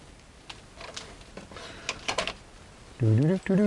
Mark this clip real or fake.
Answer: real